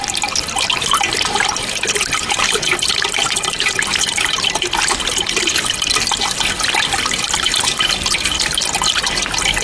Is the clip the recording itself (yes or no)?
yes